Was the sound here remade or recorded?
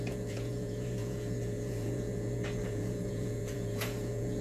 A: remade